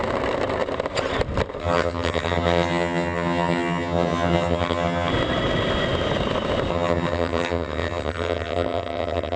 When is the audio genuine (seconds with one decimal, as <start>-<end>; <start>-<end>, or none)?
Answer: 0.0-1.6; 5.1-6.7